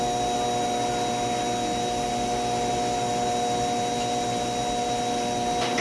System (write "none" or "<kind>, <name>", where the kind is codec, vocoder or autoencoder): none